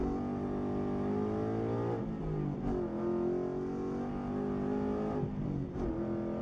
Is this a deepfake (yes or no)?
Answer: no